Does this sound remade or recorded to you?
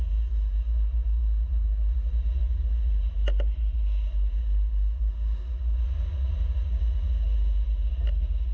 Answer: recorded